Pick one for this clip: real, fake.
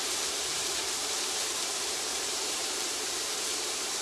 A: fake